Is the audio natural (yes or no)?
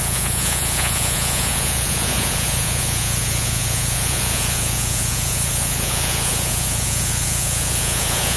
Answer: no